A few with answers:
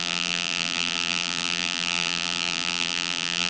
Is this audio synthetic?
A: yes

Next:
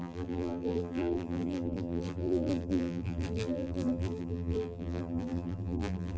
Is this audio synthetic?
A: yes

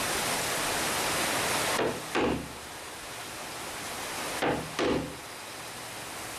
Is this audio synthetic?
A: no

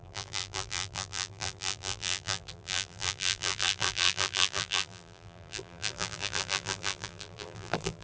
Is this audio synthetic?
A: yes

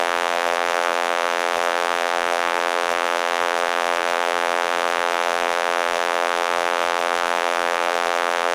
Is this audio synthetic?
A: yes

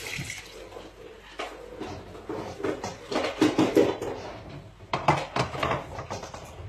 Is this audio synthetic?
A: yes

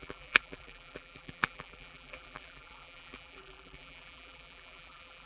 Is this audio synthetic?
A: yes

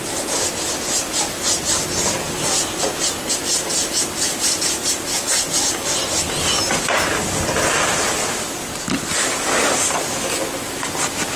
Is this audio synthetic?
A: no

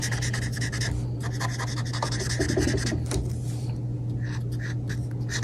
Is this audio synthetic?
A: no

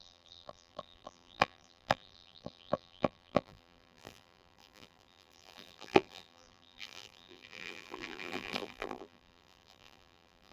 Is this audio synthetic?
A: yes